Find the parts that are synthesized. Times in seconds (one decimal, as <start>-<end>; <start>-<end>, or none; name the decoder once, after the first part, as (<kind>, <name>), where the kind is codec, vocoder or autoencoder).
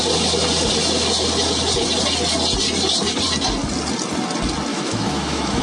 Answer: 4.7-5.6 (autoencoder, DAC-VAE)